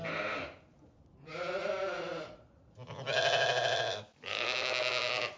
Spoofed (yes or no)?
no